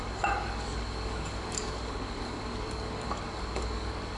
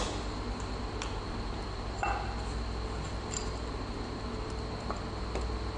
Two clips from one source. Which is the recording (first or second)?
second